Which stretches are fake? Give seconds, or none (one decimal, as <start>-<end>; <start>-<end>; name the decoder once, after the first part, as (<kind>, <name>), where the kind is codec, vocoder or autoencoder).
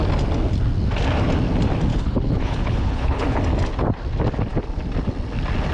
1.9-3.4 (codec, HILCodec)